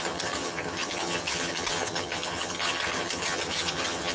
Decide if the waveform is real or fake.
fake